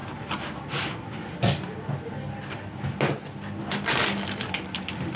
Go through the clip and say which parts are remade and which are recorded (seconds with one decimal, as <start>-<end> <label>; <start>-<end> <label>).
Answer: 0.0-5.2 recorded